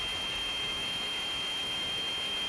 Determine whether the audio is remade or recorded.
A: remade